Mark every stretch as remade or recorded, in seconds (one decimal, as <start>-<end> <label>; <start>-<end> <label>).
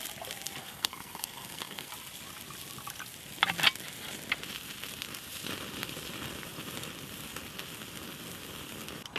0.0-0.6 recorded; 0.6-1.9 remade; 1.9-9.2 recorded